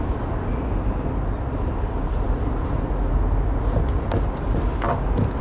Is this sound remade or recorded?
recorded